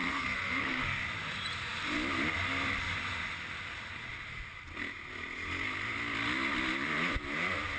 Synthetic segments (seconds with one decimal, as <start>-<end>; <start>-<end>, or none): 0.0-0.8